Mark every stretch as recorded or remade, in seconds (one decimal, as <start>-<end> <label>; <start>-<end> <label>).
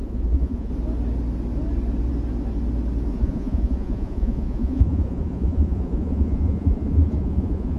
0.0-0.7 remade; 0.7-3.1 recorded; 3.1-7.8 remade